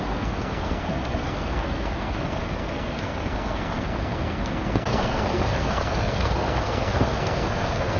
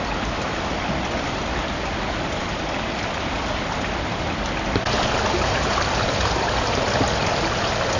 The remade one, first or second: first